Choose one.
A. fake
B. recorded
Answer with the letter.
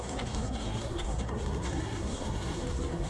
A